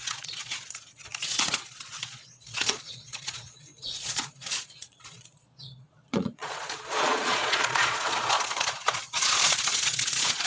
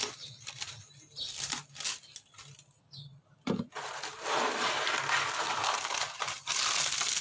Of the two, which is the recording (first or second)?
second